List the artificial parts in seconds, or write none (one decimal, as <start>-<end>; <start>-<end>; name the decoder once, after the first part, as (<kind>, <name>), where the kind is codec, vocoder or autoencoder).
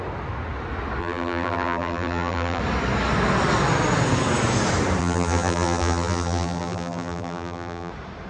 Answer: 1.0-2.6 (vocoder, BigVGAN v2); 5.0-7.9